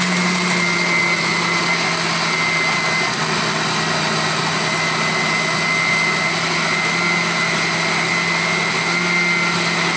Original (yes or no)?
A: yes